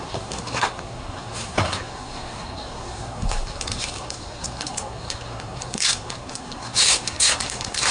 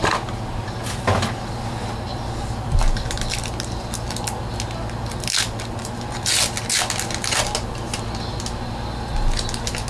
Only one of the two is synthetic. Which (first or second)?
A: first